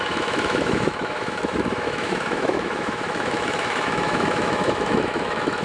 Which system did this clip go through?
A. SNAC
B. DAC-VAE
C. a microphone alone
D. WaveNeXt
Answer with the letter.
B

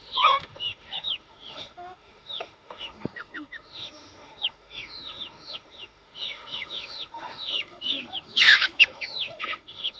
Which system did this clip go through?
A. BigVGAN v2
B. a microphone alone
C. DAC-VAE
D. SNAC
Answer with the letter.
C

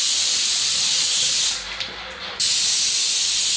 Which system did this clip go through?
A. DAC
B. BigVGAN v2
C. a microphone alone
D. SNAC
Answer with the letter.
C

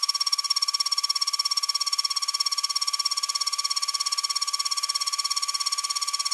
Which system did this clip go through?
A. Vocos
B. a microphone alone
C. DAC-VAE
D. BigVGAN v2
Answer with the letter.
B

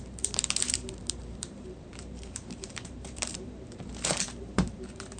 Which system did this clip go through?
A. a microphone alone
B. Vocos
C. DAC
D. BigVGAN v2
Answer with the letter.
D